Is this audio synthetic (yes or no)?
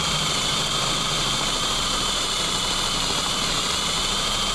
yes